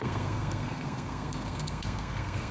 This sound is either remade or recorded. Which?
remade